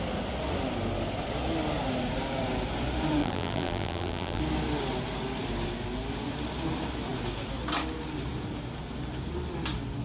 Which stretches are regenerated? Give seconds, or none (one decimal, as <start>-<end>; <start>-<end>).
3.2-4.4